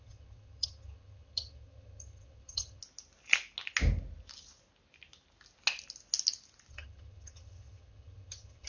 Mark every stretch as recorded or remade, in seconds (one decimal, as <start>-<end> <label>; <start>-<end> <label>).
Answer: 0.0-2.8 remade; 2.8-6.7 recorded; 6.7-8.7 remade